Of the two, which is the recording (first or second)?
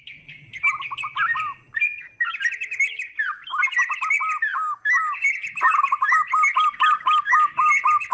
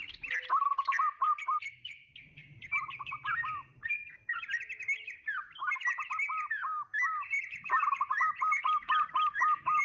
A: first